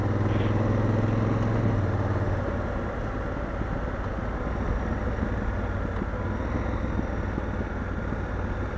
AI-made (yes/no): no